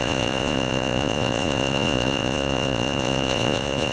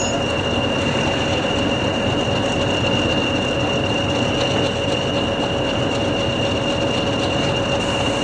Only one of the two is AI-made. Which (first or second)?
first